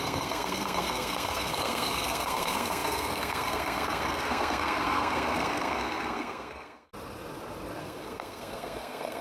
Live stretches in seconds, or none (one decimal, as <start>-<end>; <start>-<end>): 6.9-7.8